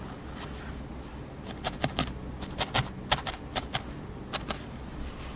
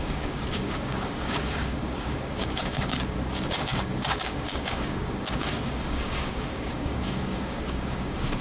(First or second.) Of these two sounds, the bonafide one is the first